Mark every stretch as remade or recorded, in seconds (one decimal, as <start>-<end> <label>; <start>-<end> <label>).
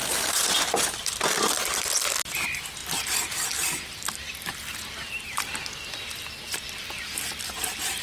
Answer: 0.0-1.1 recorded; 1.1-8.0 remade